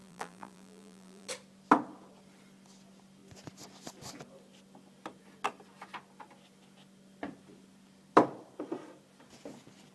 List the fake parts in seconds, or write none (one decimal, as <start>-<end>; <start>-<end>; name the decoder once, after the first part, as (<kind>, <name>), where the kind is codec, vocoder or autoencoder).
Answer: 0.0-1.3 (vocoder, BigVGAN v2)

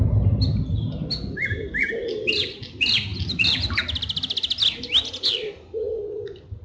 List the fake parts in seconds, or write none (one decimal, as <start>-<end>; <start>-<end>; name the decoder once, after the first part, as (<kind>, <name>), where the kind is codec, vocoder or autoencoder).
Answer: 3.1-3.8 (vocoder, BigVGAN v2)

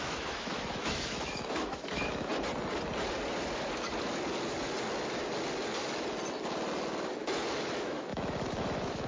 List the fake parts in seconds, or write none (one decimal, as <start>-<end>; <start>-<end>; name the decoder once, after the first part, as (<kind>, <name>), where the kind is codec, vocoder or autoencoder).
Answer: 0.0-2.3 (autoencoder, DAC-VAE); 7.2-9.1

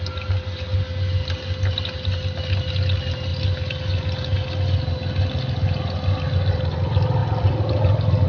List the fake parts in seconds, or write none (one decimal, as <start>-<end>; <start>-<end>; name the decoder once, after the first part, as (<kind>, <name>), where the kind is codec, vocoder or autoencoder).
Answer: none